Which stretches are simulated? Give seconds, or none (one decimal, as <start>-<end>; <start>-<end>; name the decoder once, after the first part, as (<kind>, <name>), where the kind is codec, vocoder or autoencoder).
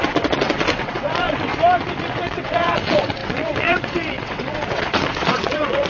0.0-1.5 (vocoder, WaveNeXt); 2.1-5.9